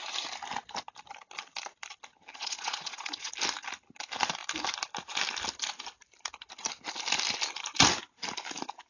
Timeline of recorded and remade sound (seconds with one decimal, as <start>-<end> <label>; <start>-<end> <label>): 0.0-2.3 recorded; 2.3-3.3 remade; 3.3-8.9 recorded